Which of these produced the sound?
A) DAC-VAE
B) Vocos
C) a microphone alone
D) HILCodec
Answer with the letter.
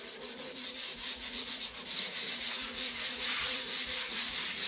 B